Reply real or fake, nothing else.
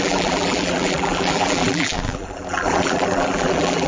fake